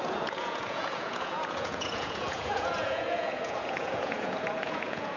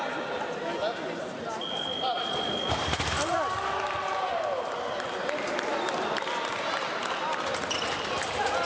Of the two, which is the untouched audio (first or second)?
second